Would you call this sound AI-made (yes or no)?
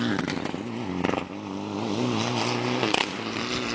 no